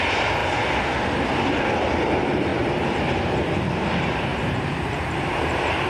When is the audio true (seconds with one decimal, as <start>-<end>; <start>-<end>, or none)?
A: 0.4-2.1